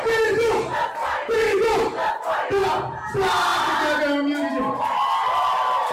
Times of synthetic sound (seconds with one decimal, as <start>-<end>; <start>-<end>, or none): none